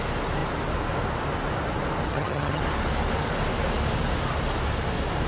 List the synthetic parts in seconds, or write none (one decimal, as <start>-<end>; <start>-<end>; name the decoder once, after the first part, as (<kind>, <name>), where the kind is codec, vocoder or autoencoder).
2.1-2.6 (vocoder, HiFi-GAN)